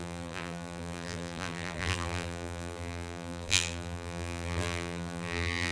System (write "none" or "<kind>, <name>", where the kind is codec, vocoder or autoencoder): vocoder, BigVGAN v2